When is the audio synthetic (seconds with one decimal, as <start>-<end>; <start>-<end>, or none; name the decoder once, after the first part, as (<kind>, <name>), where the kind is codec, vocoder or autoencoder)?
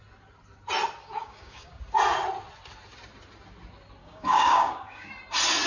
1.0-1.8 (codec, DAC); 4.0-5.1